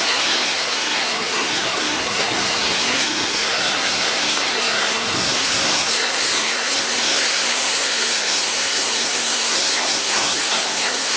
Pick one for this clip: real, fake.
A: fake